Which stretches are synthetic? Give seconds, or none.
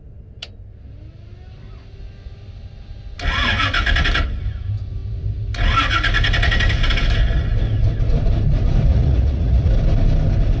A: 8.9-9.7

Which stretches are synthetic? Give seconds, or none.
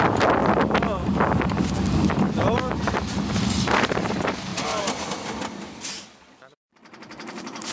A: none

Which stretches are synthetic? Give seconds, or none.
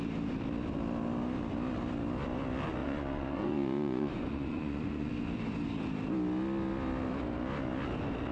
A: 2.8-5.1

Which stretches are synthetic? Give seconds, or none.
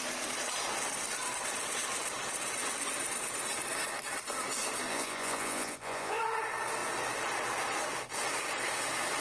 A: 4.9-6.2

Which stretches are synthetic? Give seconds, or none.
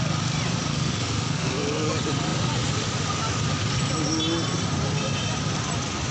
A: 0.7-1.9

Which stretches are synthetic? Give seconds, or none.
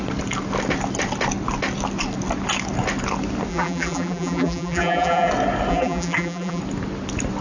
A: 3.5-5.3; 5.7-6.6